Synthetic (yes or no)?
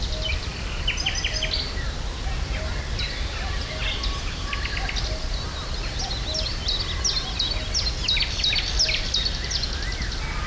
no